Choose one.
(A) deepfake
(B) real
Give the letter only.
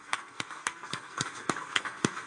A